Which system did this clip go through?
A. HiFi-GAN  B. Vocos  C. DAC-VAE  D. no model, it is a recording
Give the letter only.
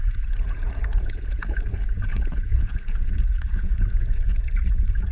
B